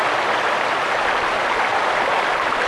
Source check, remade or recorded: recorded